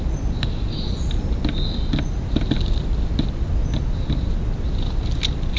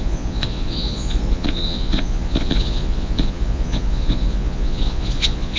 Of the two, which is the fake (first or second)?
second